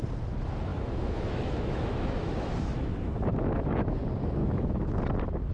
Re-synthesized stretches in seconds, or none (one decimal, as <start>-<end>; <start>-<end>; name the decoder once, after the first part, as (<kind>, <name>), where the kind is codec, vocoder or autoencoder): 0.7-4.0 (autoencoder, DAC-VAE); 4.4-5.0